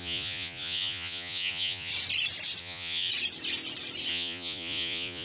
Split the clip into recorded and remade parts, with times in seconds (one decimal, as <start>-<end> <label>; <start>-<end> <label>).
0.0-1.9 remade; 1.9-2.6 recorded; 2.6-3.1 remade; 3.1-4.1 recorded; 4.1-5.2 remade